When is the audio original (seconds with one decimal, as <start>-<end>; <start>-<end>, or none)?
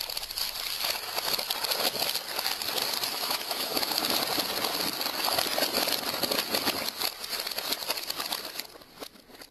0.0-3.1; 4.0-9.5